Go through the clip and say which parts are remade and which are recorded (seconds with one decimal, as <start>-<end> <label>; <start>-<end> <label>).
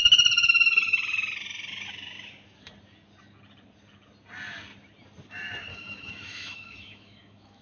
0.0-5.7 recorded; 5.7-7.6 remade